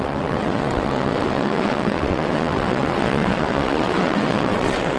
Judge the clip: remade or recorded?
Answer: remade